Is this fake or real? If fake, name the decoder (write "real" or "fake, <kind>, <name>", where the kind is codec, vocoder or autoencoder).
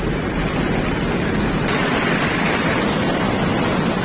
real